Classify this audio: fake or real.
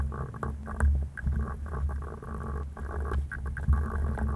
real